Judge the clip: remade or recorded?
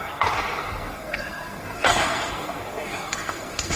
remade